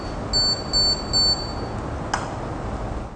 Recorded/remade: recorded